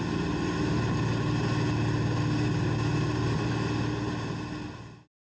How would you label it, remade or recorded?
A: recorded